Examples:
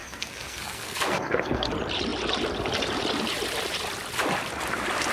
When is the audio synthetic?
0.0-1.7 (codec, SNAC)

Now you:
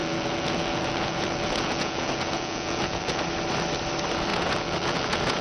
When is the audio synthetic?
0.0-3.2 (vocoder, Vocos); 4.3-5.4

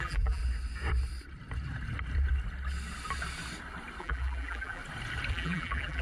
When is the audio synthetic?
0.0-0.4 (vocoder, BigVGAN v2); 4.0-4.8; 5.3-6.0